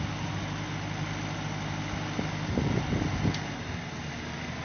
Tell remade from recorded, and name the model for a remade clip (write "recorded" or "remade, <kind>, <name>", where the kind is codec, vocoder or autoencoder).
recorded